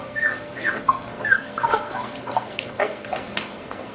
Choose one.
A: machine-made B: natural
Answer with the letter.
A